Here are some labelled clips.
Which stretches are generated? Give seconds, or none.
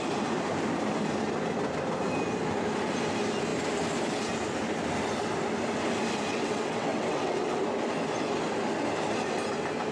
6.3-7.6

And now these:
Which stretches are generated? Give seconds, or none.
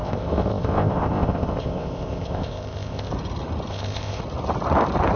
0.0-3.1; 3.7-4.2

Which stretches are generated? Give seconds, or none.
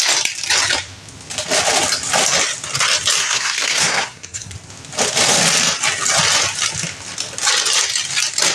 3.2-4.5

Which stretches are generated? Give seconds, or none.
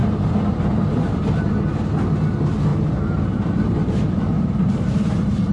0.0-1.5; 2.7-5.5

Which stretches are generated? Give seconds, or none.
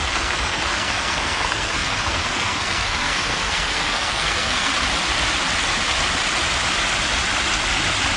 0.0-4.7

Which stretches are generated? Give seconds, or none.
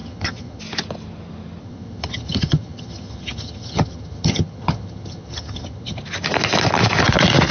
0.0-0.6; 1.6-6.0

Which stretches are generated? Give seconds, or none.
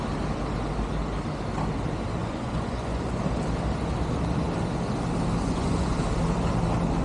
2.2-3.2; 5.4-6.0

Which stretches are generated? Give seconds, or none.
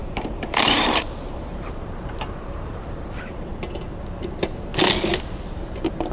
0.0-3.5; 4.1-4.7; 5.4-6.1